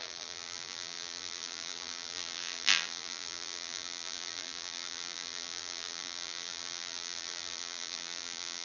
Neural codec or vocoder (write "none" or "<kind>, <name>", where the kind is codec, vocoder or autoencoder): vocoder, BigVGAN v2